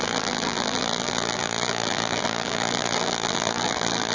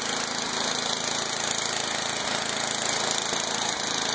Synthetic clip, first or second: first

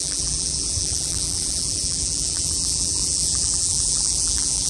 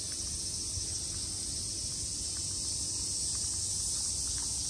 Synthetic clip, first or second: first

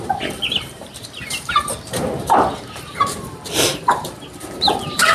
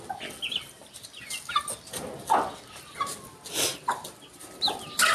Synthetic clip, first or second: first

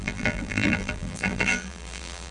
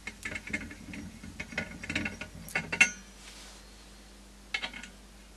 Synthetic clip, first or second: first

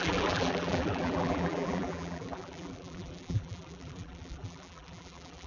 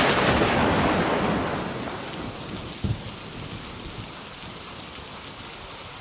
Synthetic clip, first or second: first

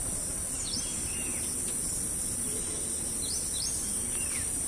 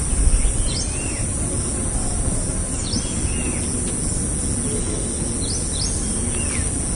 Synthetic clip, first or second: first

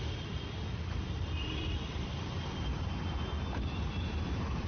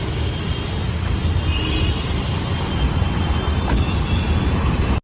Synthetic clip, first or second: first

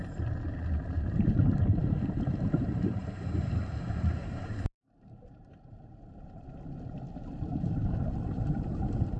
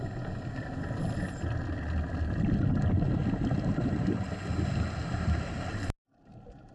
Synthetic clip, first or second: first